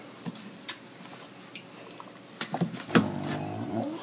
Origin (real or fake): real